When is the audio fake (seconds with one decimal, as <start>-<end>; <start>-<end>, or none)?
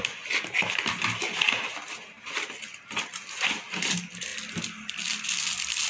none